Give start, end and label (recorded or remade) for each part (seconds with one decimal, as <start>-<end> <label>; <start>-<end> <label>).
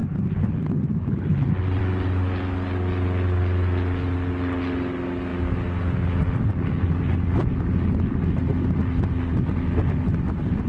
0.0-10.7 recorded